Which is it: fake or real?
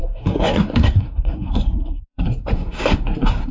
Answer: fake